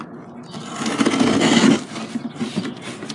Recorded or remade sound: recorded